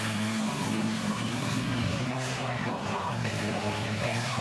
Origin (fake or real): fake